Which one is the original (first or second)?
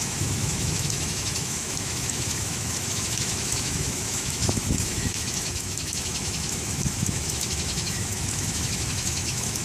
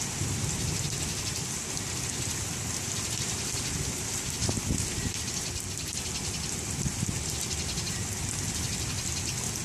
second